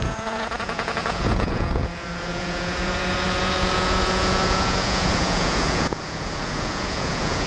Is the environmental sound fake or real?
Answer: fake